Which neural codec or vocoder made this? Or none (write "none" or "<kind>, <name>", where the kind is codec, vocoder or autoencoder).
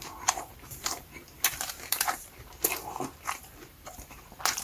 vocoder, BigVGAN v2